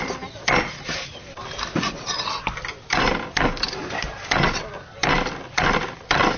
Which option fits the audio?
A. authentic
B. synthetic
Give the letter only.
A